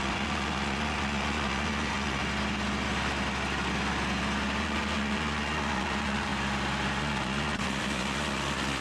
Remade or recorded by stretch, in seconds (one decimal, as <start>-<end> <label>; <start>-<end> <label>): 0.0-2.2 remade; 2.2-4.6 recorded; 4.6-6.3 remade; 6.3-7.0 recorded; 7.0-8.8 remade